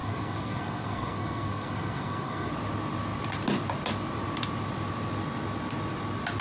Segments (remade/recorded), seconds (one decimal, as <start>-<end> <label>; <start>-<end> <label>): 0.0-2.5 remade; 2.5-6.4 recorded